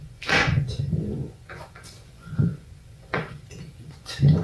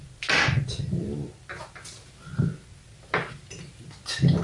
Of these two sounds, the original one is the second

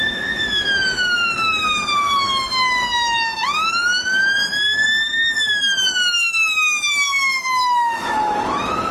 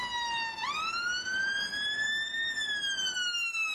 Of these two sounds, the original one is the second